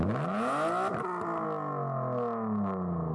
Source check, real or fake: real